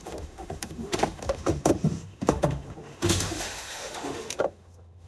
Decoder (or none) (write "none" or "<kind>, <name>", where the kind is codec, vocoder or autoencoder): autoencoder, DAC-VAE